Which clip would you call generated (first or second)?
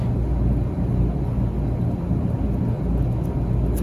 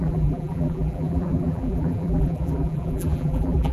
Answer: second